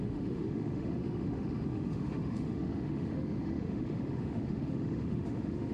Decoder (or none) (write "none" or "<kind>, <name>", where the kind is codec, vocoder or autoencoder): autoencoder, DAC-VAE